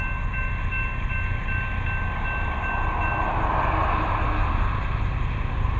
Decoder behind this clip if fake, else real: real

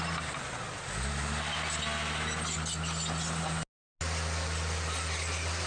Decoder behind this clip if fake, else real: real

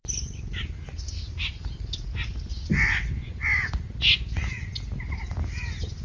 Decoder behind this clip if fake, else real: real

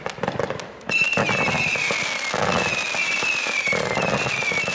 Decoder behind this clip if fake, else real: real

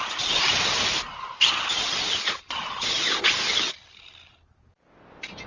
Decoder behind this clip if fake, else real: real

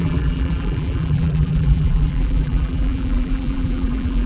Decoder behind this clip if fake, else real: fake, vocoder, BigVGAN v2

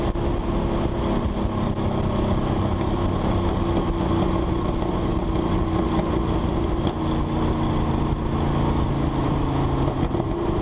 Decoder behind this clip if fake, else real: real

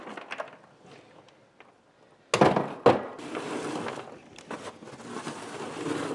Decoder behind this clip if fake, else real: real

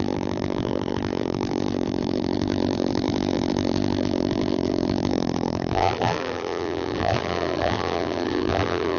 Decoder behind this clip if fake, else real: fake, vocoder, BigVGAN v2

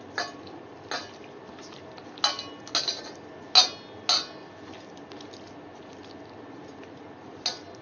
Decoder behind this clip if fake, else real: real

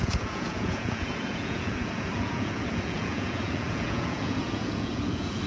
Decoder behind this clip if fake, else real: fake, vocoder, Vocos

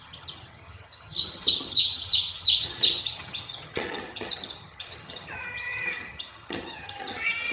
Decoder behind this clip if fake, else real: fake, vocoder, HiFi-GAN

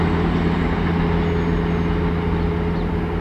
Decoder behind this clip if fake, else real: real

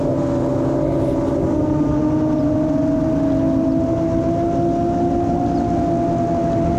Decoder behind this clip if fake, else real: real